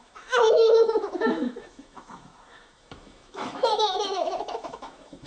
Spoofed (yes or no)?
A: yes